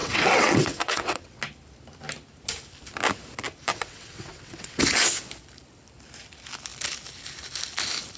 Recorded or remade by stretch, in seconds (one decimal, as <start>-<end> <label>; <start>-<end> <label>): 0.0-1.4 remade; 1.4-3.7 recorded; 3.7-4.8 remade; 4.8-8.2 recorded